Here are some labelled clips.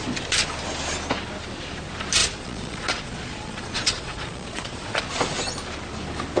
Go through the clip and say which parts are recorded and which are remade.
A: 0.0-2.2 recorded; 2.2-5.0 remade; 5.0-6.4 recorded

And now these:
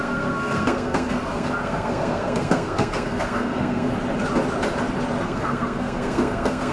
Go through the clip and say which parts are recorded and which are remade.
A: 0.0-3.9 remade; 3.9-5.2 recorded; 5.2-6.7 remade

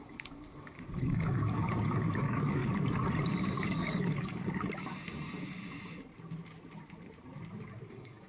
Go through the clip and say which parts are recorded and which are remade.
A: 0.0-2.6 remade; 2.6-3.6 recorded; 3.6-4.4 remade; 4.4-7.9 recorded; 7.9-8.3 remade

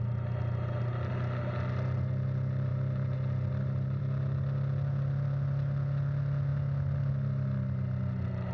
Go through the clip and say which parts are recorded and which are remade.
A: 0.0-8.5 recorded

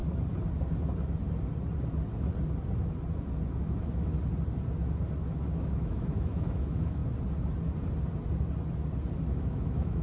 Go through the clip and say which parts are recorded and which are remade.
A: 0.0-3.6 recorded; 3.6-4.1 remade; 4.1-5.3 recorded; 5.3-7.0 remade; 7.0-9.3 recorded; 9.3-10.0 remade